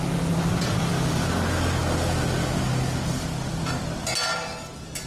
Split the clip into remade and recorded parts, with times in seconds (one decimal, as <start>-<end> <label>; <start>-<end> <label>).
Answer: 0.0-5.1 recorded